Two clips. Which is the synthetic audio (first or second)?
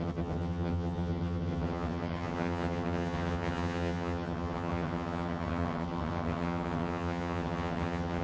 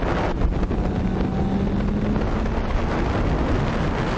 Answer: first